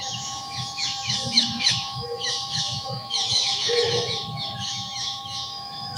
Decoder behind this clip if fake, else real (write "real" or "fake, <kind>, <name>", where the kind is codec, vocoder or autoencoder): fake, autoencoder, DAC-VAE